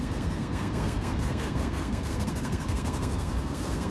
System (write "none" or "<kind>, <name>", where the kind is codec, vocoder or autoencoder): codec, SNAC